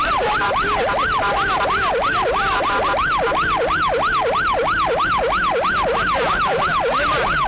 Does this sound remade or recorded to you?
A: recorded